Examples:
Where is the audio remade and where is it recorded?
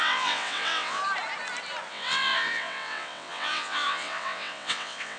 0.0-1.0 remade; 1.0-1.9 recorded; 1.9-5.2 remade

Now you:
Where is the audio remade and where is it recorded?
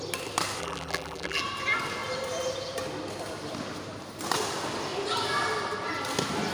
0.0-0.6 recorded; 0.6-1.4 remade; 1.4-6.5 recorded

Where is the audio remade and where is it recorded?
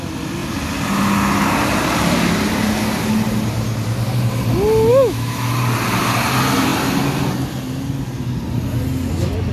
0.0-4.9 recorded; 4.9-5.5 remade; 5.5-9.5 recorded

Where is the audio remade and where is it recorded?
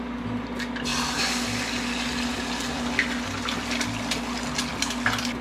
0.0-5.4 recorded